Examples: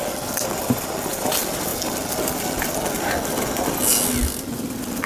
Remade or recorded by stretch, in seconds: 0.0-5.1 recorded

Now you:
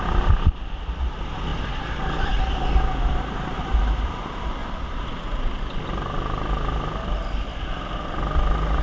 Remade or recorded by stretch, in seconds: 0.0-8.8 recorded

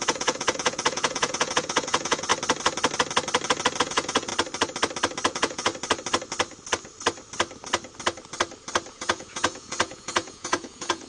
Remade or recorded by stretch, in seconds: 0.0-2.3 remade; 2.3-3.8 recorded; 3.8-4.3 remade; 4.3-5.3 recorded; 5.3-5.7 remade; 5.7-8.9 recorded; 8.9-11.1 remade

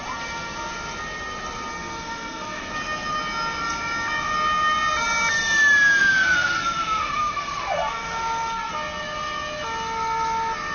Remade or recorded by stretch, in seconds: 0.0-1.7 recorded; 1.7-2.7 remade; 2.7-6.0 recorded; 6.0-8.7 remade; 8.7-10.7 recorded

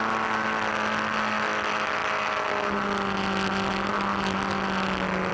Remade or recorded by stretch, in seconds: 0.0-5.3 recorded

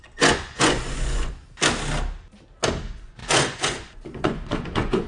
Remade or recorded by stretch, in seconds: 0.0-1.4 remade; 1.4-2.8 recorded; 2.8-5.1 remade